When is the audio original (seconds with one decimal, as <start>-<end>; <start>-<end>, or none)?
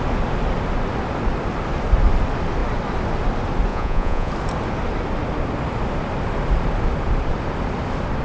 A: 0.0-3.7; 4.3-8.2